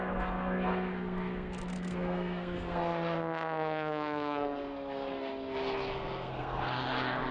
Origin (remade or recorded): remade